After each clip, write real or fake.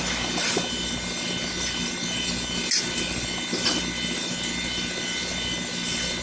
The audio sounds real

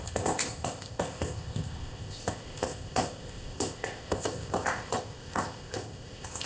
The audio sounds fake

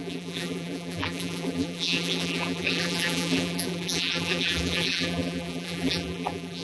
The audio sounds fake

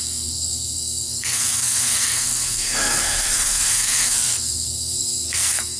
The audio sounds fake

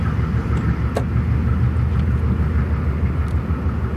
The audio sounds real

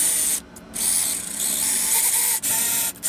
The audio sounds real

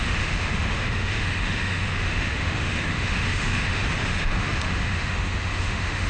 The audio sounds fake